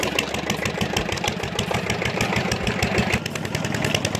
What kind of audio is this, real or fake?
real